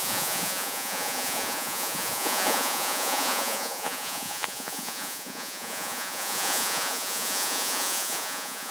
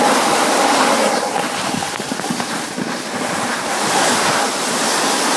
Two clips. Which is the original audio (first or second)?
second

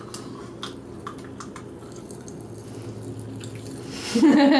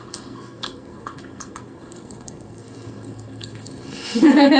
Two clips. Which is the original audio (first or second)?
first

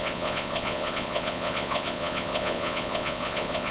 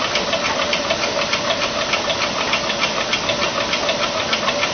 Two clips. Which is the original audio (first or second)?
second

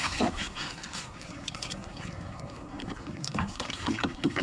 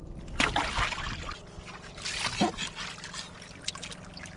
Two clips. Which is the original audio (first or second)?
second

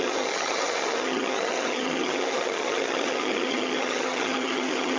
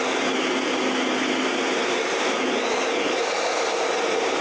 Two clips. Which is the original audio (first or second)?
second